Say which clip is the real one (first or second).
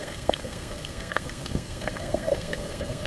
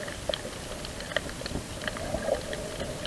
second